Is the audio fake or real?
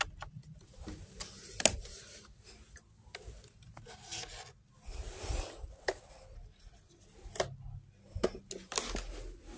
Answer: real